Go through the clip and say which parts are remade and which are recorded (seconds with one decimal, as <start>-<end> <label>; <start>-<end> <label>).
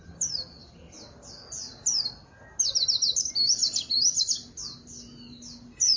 0.0-6.0 recorded